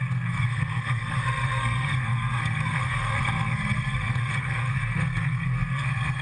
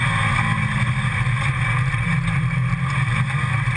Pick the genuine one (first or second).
second